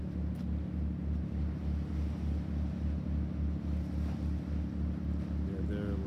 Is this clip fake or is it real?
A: real